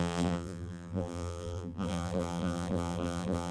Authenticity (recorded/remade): remade